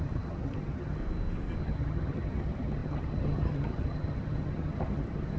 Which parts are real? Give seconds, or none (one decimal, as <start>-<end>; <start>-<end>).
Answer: 1.0-1.6